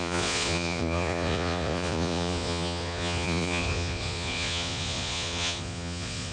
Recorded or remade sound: remade